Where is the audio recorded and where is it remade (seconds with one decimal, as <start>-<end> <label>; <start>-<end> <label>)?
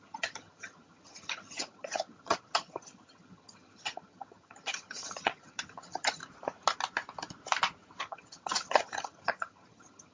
0.0-6.2 remade; 6.2-8.0 recorded; 8.0-10.1 remade